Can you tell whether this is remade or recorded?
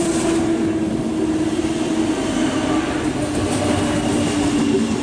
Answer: recorded